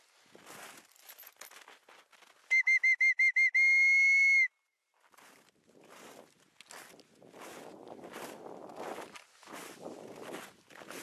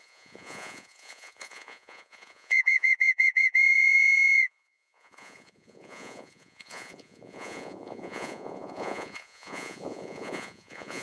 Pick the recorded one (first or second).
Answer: first